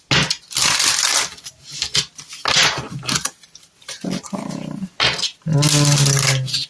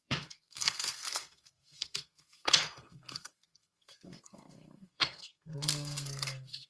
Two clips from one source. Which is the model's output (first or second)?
second